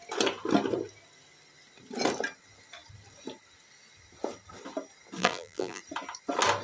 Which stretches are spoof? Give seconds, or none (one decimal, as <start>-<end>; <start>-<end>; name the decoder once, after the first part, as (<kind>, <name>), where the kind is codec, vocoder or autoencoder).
5.2-5.8 (vocoder, BigVGAN v2)